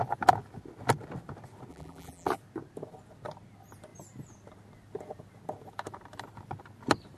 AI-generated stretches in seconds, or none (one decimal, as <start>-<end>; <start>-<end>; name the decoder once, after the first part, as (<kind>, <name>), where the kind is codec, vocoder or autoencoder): 1.7-2.3 (vocoder, BigVGAN v2)